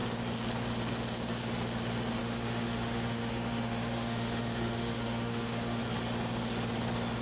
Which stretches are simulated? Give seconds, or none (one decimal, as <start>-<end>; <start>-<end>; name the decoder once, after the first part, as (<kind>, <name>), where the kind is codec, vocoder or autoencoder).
2.2-5.8 (autoencoder, DAC-VAE)